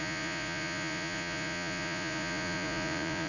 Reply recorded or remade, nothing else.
remade